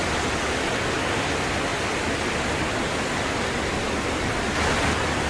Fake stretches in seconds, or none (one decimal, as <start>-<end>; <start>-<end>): none

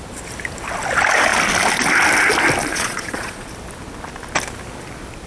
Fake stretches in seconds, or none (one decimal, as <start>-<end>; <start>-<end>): 2.6-3.5

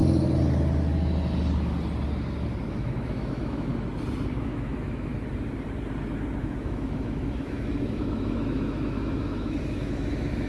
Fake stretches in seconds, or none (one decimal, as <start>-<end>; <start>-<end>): 2.7-3.7; 4.4-5.1; 6.4-10.5

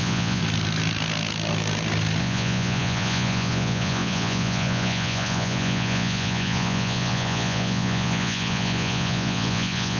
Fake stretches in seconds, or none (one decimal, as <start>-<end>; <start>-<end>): 0.0-0.4; 2.2-10.0

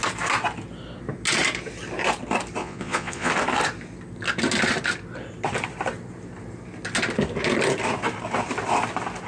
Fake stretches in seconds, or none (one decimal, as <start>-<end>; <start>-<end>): 2.6-3.3

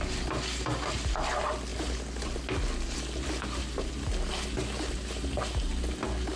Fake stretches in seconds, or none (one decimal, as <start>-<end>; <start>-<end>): none

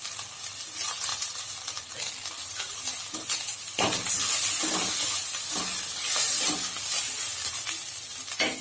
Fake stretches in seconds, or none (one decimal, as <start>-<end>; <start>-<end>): none

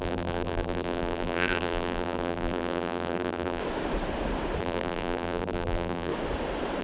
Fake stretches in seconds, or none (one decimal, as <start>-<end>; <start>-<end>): 0.0-3.6; 4.6-6.1